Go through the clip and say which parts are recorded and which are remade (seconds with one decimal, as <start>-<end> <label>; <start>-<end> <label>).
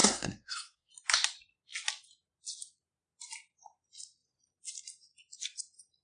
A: 0.0-0.9 remade; 0.9-6.0 recorded